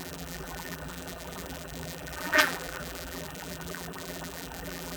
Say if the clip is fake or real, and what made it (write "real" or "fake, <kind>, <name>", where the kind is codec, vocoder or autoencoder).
fake, vocoder, BigVGAN v2